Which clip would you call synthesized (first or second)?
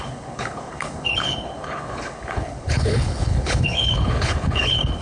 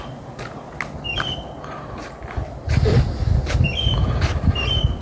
first